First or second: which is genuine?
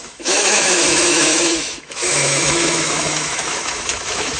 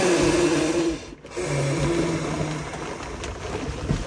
second